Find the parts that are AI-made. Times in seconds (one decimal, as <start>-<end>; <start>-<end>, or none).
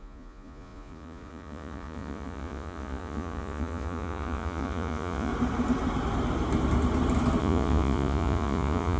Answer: 0.0-5.3; 7.4-9.0